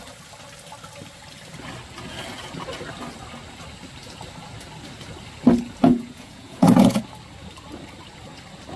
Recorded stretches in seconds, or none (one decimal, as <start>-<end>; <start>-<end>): 0.0-5.9; 7.0-8.8